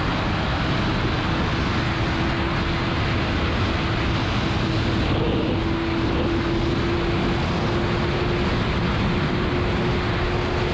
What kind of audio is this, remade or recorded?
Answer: recorded